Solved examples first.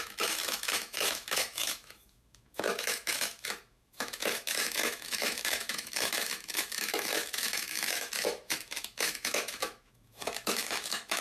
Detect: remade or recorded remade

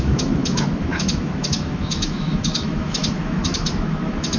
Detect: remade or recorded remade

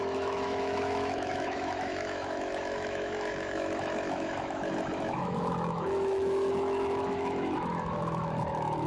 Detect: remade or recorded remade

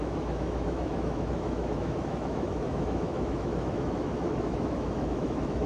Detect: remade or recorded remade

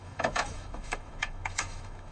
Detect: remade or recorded remade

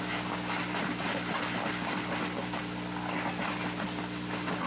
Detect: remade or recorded recorded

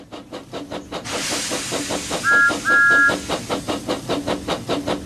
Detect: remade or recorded recorded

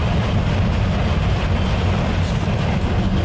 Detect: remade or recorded recorded